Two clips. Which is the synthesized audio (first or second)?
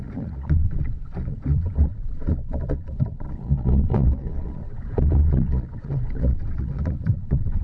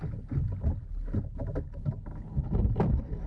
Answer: first